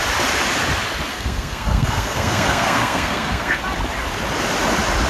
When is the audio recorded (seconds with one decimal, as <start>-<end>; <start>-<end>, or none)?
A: 0.0-1.1; 3.6-5.1